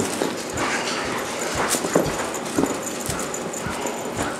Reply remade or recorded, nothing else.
recorded